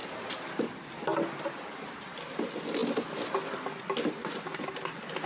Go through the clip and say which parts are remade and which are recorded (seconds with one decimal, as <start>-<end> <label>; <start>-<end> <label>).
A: 0.0-5.3 recorded